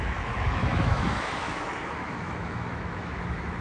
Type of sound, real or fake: fake